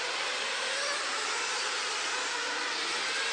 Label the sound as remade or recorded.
recorded